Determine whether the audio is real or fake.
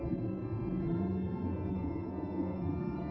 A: fake